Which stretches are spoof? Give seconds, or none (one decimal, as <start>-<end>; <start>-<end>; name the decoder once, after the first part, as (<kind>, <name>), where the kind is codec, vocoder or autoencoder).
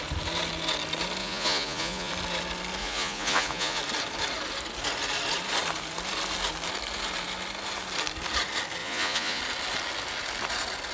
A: 1.2-2.1 (vocoder, Vocos); 2.8-3.8; 8.8-9.4